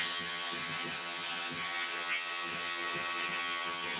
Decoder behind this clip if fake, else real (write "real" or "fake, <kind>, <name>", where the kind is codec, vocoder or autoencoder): fake, vocoder, HiFi-GAN